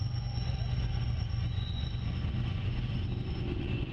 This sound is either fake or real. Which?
fake